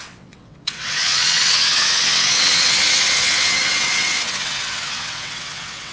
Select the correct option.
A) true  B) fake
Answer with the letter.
B